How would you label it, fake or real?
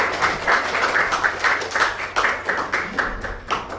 real